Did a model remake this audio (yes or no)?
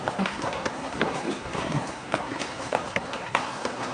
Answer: yes